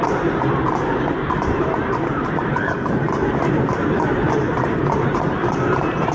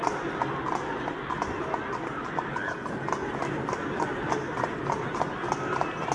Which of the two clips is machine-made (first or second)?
first